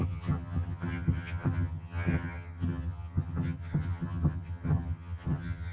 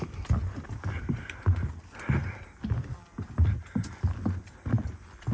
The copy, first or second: first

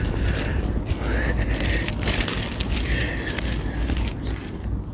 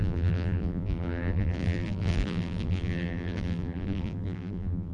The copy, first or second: second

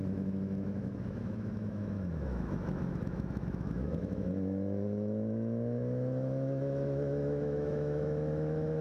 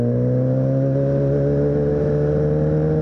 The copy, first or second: first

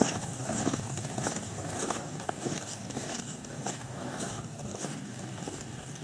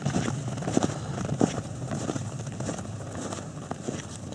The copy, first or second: first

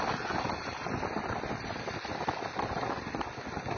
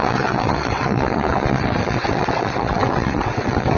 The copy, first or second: second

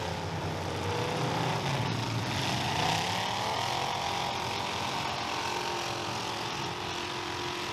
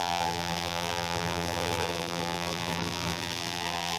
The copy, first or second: second